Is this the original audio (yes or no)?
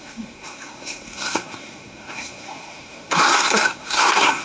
no